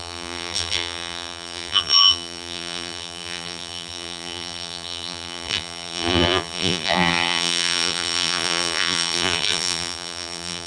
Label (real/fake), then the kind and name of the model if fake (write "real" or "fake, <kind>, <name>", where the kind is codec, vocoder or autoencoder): fake, vocoder, BigVGAN v2